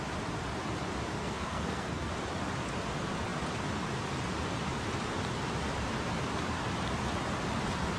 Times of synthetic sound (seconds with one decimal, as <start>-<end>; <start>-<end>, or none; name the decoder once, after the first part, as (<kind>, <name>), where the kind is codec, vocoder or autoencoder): 1.2-2.1 (codec, SNAC)